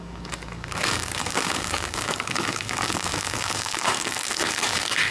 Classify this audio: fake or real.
fake